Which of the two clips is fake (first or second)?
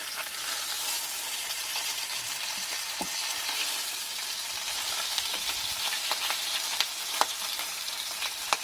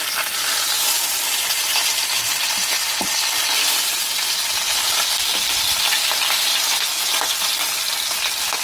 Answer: first